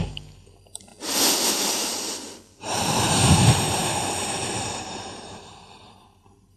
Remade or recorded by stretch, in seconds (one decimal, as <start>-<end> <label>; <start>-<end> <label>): 0.0-0.9 remade; 0.9-1.5 recorded; 1.5-6.6 remade